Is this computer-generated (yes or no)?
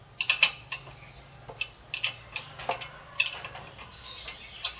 no